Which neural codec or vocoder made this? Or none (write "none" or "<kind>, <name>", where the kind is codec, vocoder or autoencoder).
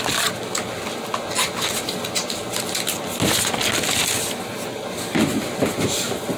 none